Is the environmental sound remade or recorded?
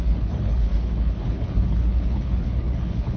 remade